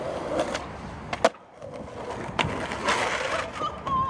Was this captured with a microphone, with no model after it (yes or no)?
yes